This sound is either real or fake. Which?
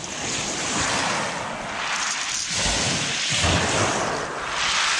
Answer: real